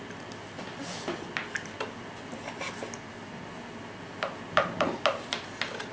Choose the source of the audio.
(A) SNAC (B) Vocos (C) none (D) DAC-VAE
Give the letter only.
C